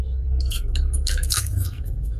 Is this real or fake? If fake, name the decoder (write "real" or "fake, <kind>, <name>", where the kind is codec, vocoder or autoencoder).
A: fake, codec, SNAC